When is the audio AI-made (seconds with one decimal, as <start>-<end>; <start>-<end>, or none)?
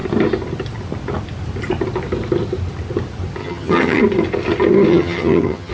3.4-4.0; 4.9-5.7